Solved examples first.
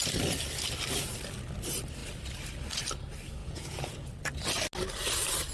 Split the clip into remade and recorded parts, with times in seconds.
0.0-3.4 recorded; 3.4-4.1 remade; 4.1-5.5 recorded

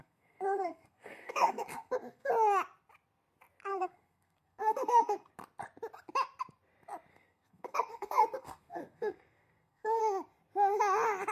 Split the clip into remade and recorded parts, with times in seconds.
0.0-2.3 remade; 2.3-3.7 recorded; 3.7-5.3 remade; 5.3-7.1 recorded; 7.1-10.0 remade; 10.0-11.3 recorded

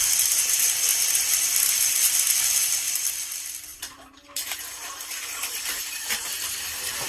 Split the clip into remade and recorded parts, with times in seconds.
0.0-3.7 recorded; 3.7-7.1 remade

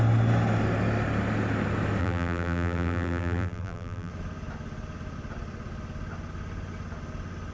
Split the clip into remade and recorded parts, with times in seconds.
0.0-2.0 recorded; 2.0-4.1 remade; 4.1-7.5 recorded

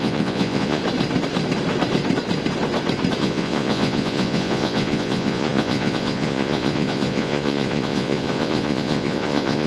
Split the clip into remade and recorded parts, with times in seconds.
0.0-0.8 remade; 0.8-3.2 recorded; 3.2-9.7 remade

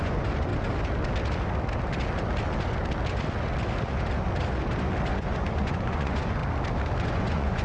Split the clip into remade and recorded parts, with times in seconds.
0.0-0.5 remade; 0.5-5.1 recorded; 5.1-6.4 remade; 6.4-7.0 recorded; 7.0-7.6 remade

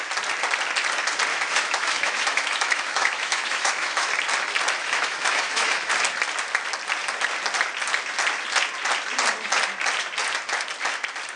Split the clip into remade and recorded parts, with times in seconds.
0.0-1.3 recorded; 1.3-4.1 remade; 4.1-4.8 recorded; 4.8-5.9 remade; 5.9-11.4 recorded

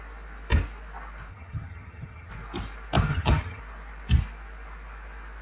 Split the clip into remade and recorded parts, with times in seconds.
0.0-1.3 recorded; 1.3-2.3 remade; 2.3-3.1 recorded; 3.1-3.6 remade; 3.6-5.4 recorded